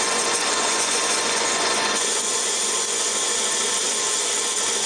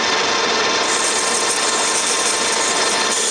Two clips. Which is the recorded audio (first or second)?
second